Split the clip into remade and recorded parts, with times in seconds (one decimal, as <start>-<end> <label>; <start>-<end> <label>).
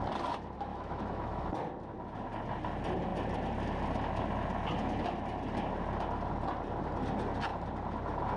0.0-0.7 recorded; 0.7-1.5 remade; 1.5-8.4 recorded